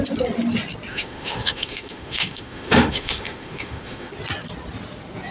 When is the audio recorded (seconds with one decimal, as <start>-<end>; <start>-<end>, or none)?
0.0-0.9; 4.1-5.3